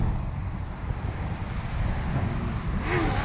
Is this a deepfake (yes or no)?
no